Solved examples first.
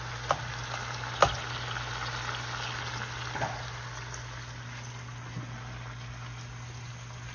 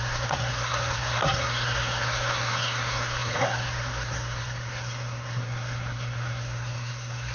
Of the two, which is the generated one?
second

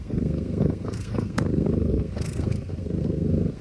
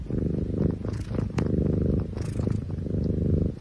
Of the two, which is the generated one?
first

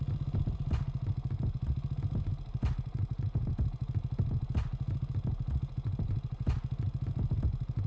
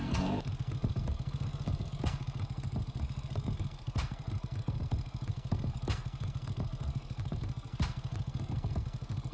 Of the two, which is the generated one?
second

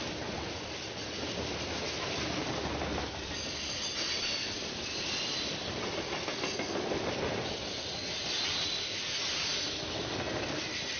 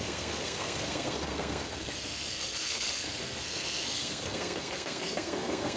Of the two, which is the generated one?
second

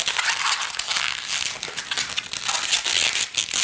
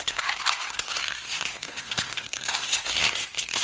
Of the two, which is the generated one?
second